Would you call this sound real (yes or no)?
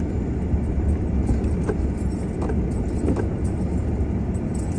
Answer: yes